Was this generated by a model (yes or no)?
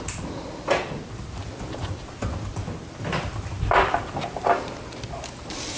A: no